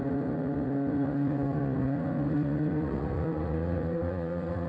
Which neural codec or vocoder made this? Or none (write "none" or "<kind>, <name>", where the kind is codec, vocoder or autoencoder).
vocoder, Vocos